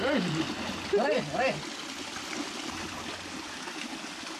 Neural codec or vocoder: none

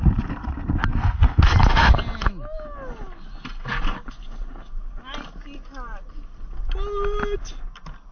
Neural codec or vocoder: none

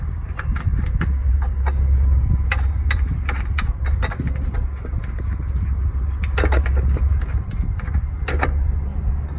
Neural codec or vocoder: none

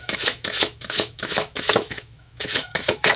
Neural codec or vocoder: autoencoder, DAC-VAE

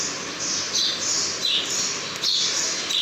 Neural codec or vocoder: none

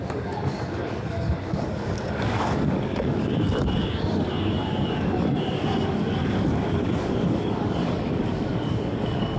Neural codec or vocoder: codec, DAC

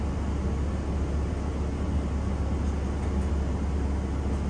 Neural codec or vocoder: none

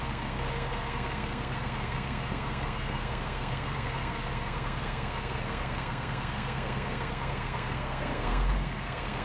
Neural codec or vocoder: codec, SNAC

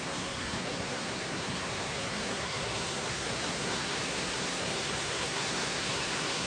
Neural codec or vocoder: codec, SNAC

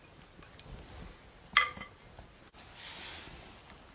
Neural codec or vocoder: none